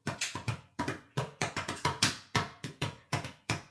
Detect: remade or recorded remade